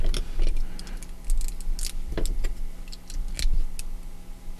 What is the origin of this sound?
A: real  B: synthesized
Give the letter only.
A